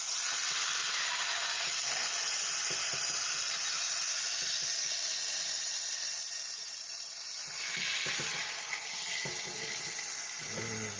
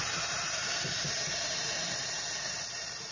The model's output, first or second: second